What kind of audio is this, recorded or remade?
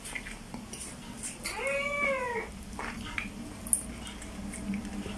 recorded